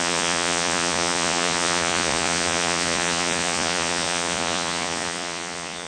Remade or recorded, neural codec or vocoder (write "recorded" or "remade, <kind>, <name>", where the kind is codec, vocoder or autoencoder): remade, vocoder, Vocos